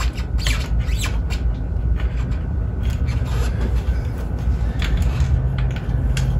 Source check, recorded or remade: recorded